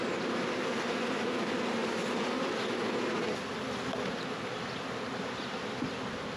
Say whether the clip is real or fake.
real